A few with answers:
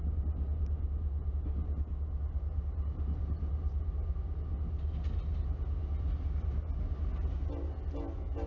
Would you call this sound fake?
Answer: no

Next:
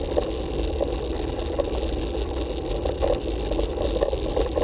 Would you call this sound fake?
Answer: no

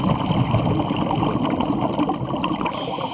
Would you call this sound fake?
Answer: no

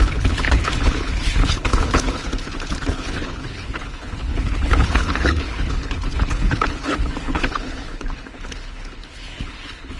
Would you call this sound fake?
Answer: yes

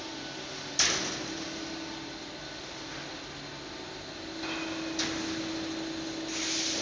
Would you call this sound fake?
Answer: no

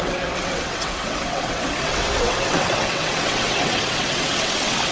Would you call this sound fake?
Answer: yes